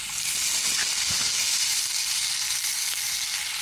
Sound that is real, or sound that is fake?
real